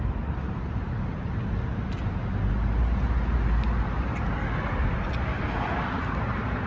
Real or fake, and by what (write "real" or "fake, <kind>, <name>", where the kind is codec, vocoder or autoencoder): real